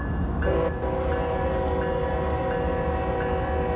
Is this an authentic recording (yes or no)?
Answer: yes